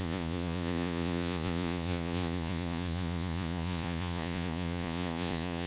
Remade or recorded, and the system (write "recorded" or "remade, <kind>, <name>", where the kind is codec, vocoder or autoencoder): remade, vocoder, Vocos